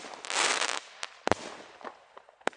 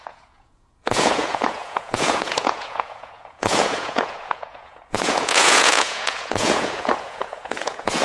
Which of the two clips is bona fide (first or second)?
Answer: first